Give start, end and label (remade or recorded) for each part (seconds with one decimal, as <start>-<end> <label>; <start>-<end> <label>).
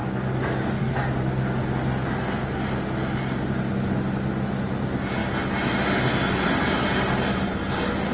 0.0-8.1 recorded